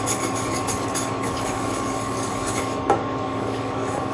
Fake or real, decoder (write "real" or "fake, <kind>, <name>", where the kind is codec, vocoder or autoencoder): fake, codec, DAC